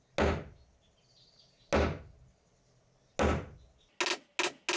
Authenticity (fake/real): real